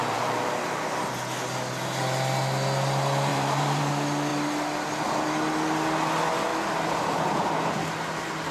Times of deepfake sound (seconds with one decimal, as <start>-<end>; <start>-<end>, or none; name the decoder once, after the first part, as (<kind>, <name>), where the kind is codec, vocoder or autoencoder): 0.0-0.8 (vocoder, BigVGAN v2); 3.3-3.9